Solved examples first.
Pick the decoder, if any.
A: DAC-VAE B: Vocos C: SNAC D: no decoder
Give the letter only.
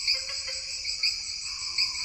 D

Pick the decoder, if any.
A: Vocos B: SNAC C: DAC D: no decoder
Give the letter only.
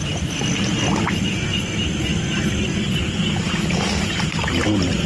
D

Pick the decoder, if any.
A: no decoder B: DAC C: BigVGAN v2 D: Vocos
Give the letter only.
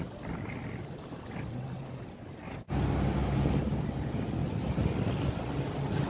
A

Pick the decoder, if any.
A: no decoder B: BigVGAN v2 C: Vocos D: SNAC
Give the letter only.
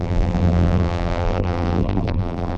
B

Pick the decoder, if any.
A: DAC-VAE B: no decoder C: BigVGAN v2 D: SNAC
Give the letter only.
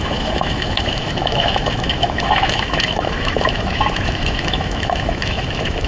A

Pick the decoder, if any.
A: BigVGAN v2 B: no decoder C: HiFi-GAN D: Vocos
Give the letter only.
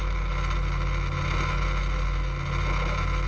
B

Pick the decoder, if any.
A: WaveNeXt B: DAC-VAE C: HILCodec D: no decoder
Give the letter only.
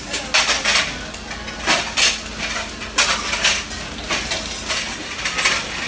D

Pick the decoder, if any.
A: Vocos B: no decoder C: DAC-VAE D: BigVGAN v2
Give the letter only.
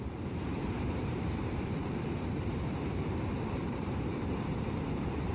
D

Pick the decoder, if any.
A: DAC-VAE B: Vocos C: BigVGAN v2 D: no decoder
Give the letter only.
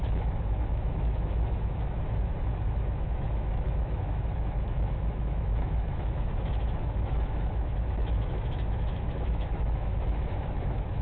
A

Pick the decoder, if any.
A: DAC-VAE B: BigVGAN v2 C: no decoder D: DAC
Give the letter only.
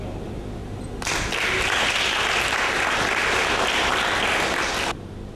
C